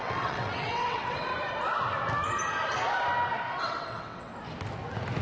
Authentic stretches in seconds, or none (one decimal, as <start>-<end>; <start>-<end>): 1.3-3.6; 4.3-5.2